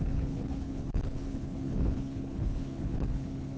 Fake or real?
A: fake